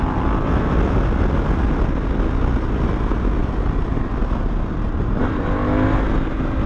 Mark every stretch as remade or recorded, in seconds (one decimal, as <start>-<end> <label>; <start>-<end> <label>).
0.0-6.7 recorded